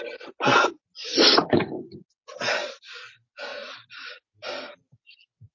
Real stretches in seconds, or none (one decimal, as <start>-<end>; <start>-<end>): 0.0-5.5